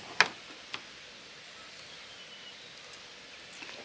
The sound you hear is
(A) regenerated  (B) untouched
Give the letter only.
B